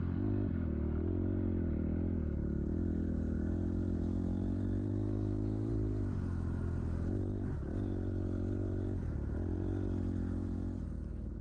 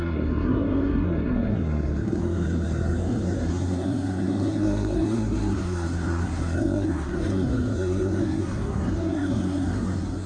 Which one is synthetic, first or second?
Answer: second